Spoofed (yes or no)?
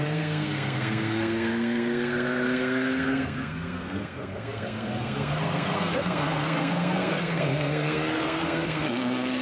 yes